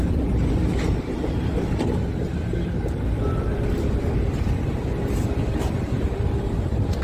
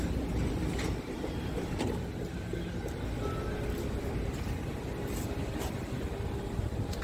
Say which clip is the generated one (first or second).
first